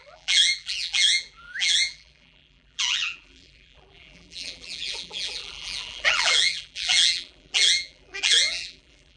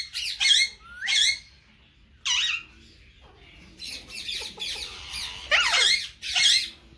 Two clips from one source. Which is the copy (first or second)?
first